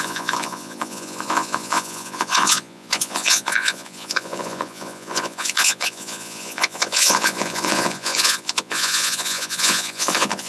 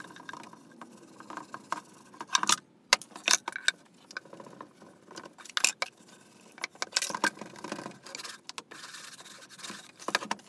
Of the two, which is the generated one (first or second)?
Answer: first